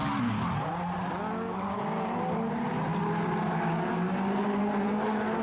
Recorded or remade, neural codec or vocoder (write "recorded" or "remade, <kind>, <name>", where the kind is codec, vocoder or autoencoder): recorded